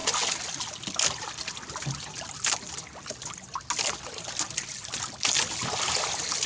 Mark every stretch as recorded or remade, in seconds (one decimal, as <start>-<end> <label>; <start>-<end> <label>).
0.0-6.5 recorded